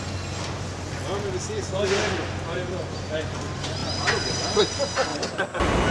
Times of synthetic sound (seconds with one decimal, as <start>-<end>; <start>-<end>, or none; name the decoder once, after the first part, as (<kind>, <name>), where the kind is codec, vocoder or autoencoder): none